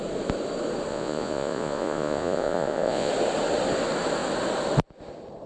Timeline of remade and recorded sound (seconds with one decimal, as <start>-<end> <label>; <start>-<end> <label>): 0.0-0.9 recorded; 0.9-3.1 remade; 3.1-5.5 recorded